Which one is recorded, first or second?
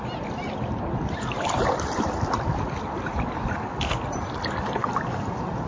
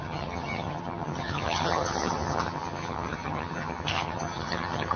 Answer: first